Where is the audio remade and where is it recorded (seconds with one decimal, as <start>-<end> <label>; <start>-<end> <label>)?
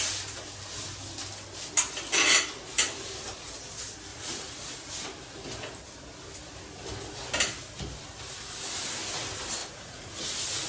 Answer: 0.0-4.1 recorded; 4.1-4.9 remade; 4.9-9.6 recorded; 9.6-10.7 remade